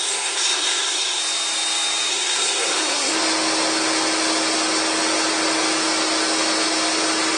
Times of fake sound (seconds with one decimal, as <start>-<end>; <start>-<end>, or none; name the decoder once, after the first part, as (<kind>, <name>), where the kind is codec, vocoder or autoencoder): 0.0-1.2 (codec, SNAC); 2.1-3.1